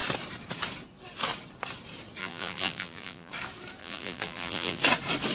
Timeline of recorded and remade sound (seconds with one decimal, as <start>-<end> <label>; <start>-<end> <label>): 0.0-2.2 recorded; 2.2-3.3 remade; 3.3-3.8 recorded; 3.8-4.8 remade; 4.8-5.3 recorded